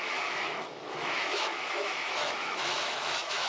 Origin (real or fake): fake